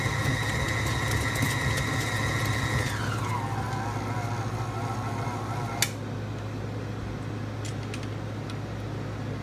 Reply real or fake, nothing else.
real